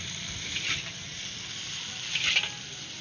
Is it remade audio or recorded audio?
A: recorded